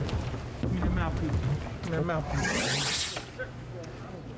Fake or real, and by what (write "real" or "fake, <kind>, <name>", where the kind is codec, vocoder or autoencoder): real